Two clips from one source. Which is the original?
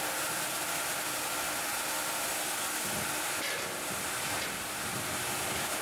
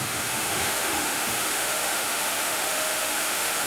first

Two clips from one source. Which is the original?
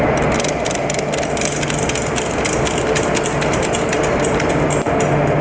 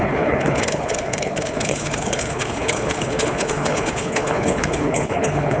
first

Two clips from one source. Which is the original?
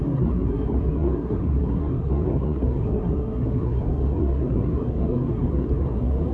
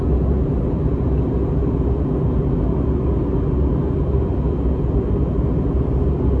second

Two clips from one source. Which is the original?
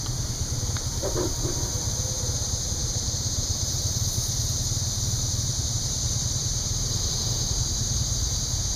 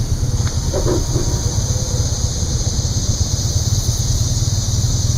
second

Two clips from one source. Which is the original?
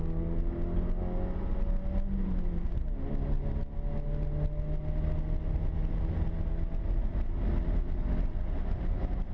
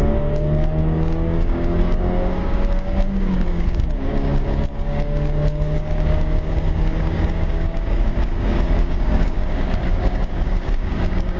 first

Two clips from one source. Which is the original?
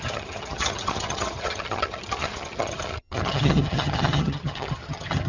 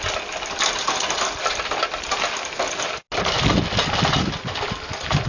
second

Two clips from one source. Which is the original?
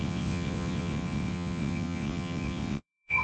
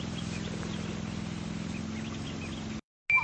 second